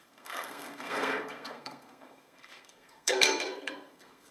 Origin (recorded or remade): remade